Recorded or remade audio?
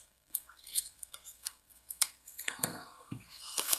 remade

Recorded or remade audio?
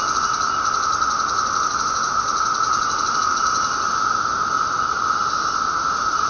recorded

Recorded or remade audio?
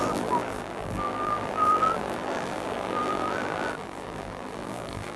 remade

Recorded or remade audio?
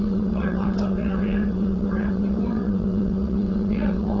remade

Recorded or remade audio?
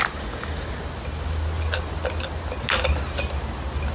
recorded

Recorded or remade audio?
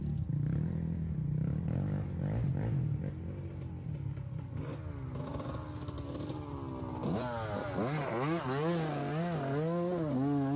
recorded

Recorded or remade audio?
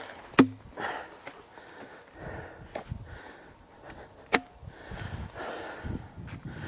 recorded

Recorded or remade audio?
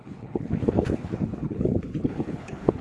remade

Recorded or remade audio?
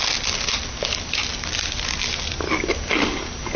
recorded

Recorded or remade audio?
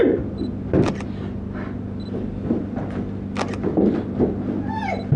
recorded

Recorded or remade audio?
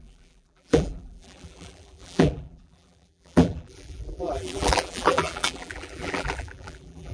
remade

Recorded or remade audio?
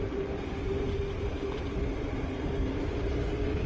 remade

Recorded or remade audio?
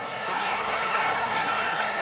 remade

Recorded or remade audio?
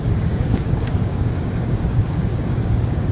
remade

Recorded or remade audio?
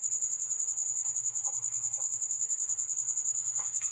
remade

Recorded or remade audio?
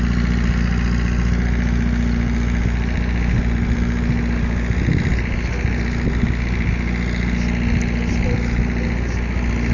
recorded